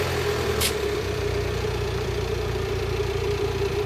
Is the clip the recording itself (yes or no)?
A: no